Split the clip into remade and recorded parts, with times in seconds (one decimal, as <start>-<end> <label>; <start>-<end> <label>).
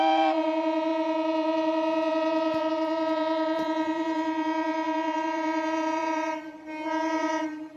0.0-7.8 remade